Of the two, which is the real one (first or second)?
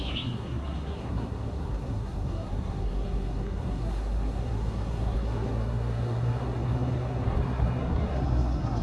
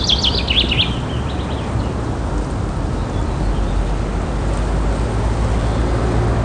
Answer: second